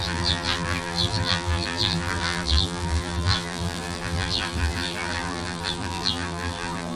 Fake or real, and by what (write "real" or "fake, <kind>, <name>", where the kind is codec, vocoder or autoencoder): fake, vocoder, BigVGAN v2